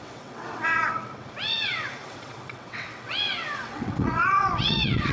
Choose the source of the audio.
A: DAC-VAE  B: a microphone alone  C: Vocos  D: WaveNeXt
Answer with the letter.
D